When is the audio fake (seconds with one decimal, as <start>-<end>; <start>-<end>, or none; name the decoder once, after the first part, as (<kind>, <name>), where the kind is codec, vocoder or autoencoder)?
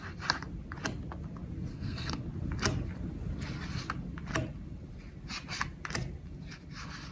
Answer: 1.7-2.2 (codec, SNAC)